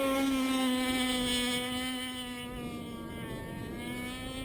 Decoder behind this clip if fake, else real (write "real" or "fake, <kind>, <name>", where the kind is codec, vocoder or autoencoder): real